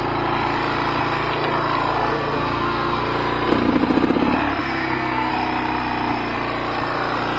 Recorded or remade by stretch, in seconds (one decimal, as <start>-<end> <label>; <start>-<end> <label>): 0.0-2.1 recorded; 2.1-3.0 remade; 3.0-4.6 recorded; 4.6-5.3 remade; 5.3-7.4 recorded